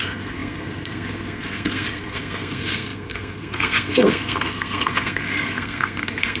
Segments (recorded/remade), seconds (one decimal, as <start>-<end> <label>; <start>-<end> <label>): 0.0-6.4 remade